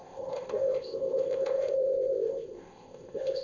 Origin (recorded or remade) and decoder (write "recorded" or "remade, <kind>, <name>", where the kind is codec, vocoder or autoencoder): remade, codec, ZipCodec